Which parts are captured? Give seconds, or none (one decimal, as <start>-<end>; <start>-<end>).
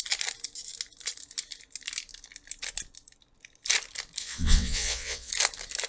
0.0-4.2; 5.3-5.9